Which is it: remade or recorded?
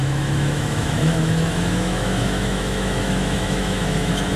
remade